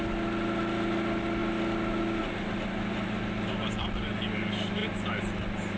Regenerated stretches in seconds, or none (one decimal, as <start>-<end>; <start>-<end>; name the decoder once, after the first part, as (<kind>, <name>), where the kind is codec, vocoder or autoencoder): none